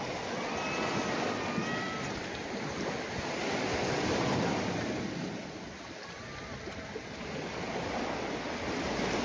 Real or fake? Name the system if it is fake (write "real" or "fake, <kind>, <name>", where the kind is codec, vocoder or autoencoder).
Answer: real